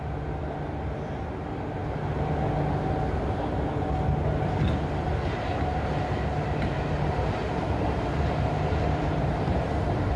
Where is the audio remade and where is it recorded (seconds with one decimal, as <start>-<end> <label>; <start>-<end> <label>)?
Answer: 0.0-7.4 recorded; 7.4-10.2 remade